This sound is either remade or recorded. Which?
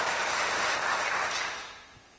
remade